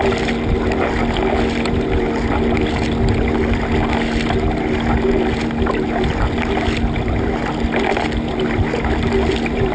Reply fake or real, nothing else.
real